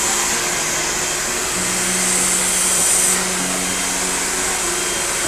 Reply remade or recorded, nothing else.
recorded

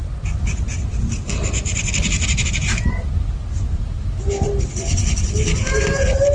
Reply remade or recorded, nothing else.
recorded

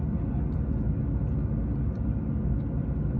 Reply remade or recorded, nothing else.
recorded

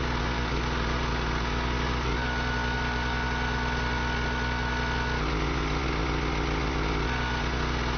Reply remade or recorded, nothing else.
recorded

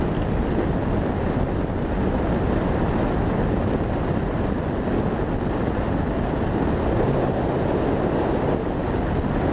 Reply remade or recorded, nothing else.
recorded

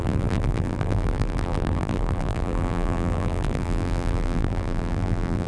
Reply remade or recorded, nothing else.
remade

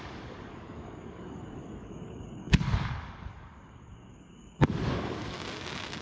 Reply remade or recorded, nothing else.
remade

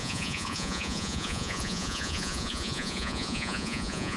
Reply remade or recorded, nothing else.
remade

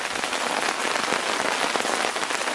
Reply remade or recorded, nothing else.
recorded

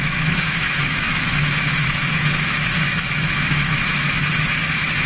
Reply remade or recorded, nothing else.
remade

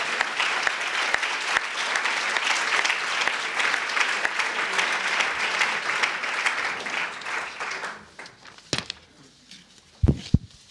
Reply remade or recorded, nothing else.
recorded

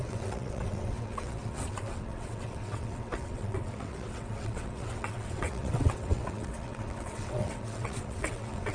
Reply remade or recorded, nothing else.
remade